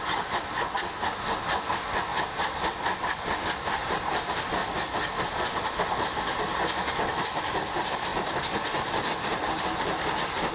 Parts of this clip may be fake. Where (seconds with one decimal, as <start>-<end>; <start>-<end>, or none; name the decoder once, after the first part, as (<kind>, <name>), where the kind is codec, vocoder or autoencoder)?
none